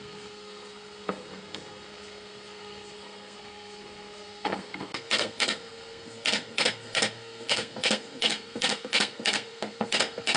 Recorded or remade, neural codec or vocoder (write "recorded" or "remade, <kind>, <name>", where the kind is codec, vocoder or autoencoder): remade, codec, SNAC